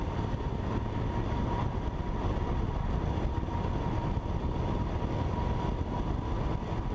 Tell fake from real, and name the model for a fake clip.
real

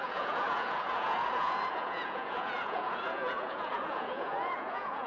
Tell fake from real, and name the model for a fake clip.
fake, vocoder, Vocos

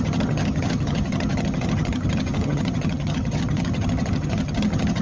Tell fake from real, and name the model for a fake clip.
fake, vocoder, HiFi-GAN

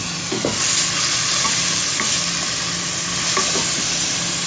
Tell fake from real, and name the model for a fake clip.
real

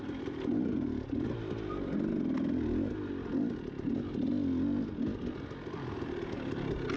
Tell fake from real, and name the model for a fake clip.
real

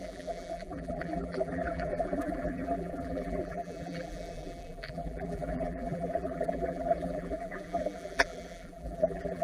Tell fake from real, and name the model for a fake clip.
fake, vocoder, BigVGAN v2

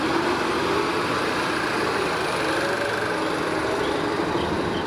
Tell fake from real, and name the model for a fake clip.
real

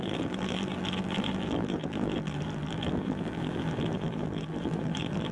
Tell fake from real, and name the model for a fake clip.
fake, vocoder, BigVGAN v2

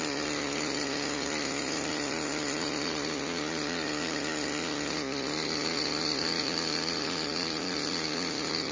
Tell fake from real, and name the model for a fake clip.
real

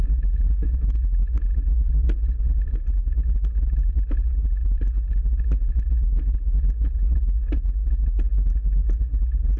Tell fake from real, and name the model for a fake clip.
real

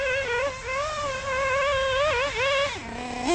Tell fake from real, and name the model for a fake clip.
real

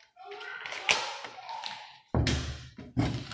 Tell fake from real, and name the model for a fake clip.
real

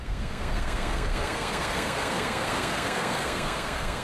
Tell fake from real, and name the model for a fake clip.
fake, codec, SNAC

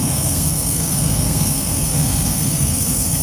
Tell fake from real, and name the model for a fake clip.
fake, codec, SNAC